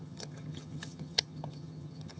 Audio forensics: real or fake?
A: fake